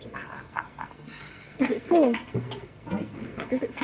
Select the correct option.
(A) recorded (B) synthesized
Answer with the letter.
B